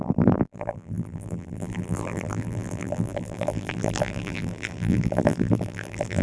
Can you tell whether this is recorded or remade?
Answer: remade